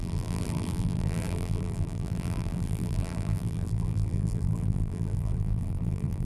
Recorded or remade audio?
remade